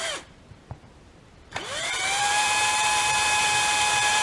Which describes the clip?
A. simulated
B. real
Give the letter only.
A